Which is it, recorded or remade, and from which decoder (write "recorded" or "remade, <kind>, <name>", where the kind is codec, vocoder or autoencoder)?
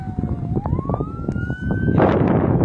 recorded